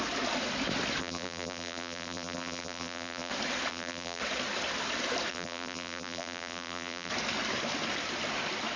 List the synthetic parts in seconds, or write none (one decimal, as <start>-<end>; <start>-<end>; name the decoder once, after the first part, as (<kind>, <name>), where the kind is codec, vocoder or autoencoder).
1.0-3.3 (vocoder, BigVGAN v2); 3.7-4.2; 5.3-7.1